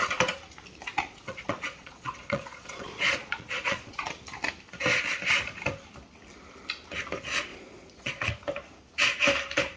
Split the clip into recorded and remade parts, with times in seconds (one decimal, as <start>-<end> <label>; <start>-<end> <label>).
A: 0.0-0.8 recorded; 0.8-4.1 remade; 4.1-7.5 recorded; 7.5-8.3 remade; 8.3-9.8 recorded